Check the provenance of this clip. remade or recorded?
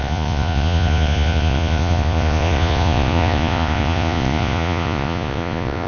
remade